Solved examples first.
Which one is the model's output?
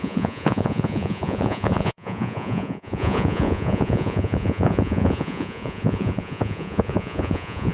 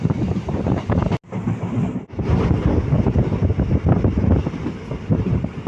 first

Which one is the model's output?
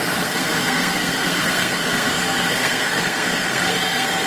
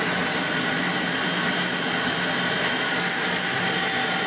first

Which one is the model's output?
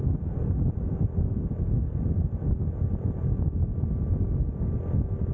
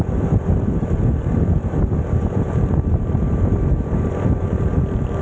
second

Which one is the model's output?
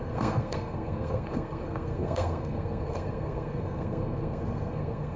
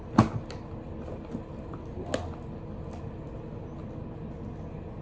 first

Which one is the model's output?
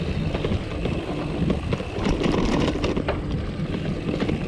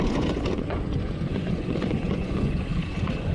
second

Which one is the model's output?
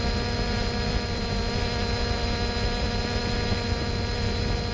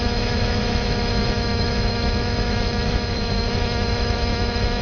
second